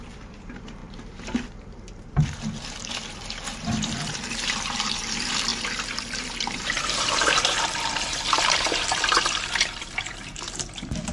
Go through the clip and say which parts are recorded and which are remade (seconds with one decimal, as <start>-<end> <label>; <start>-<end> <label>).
0.0-11.1 remade